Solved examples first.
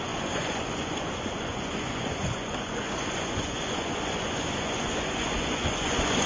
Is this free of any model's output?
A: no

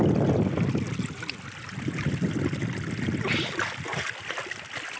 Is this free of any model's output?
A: yes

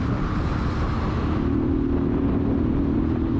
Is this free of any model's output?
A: yes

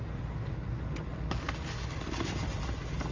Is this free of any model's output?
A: yes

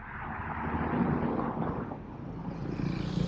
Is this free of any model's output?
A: yes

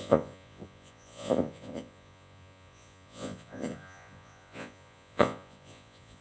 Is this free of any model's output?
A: no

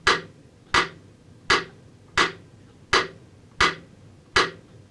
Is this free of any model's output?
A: yes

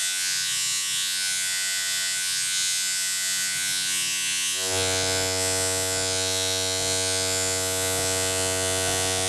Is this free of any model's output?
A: no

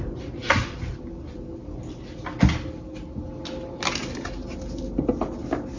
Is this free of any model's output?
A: yes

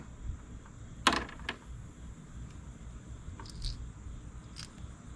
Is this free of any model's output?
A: yes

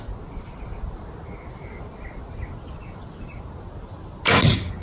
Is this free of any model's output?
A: yes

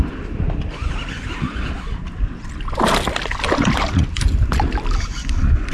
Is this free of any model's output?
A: yes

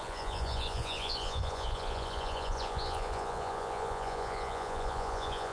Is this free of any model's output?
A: no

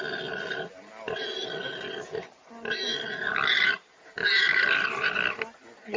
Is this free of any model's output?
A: yes